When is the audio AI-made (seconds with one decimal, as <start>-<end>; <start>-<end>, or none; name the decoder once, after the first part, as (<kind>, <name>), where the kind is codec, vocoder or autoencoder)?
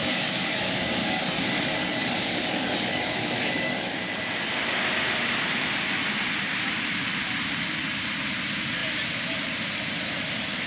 0.0-4.0 (codec, DAC)